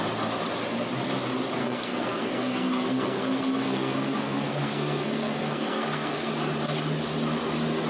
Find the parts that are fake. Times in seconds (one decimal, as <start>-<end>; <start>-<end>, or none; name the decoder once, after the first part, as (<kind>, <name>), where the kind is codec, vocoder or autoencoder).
1.6-6.3 (codec, SNAC)